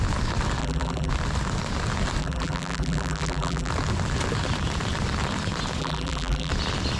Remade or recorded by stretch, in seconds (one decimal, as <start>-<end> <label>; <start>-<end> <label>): 0.0-0.6 recorded; 0.6-1.1 remade; 1.1-2.2 recorded; 2.2-3.7 remade; 3.7-5.8 recorded; 5.8-6.5 remade; 6.5-7.0 recorded